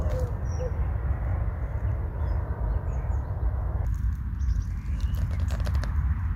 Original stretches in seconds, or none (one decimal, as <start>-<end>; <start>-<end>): 0.0-6.4